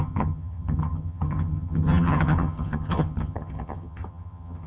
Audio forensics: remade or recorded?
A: remade